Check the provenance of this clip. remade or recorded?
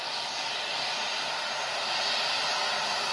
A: recorded